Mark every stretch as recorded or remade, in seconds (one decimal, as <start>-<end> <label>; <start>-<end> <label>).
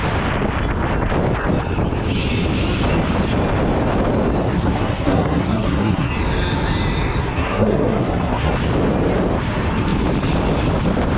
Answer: 0.0-4.4 recorded; 4.4-6.1 remade; 6.1-7.2 recorded; 7.2-8.5 remade; 8.5-11.2 recorded